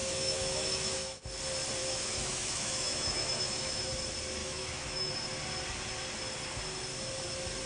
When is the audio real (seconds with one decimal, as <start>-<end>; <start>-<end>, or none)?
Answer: 1.2-1.8; 3.9-4.4; 5.1-7.7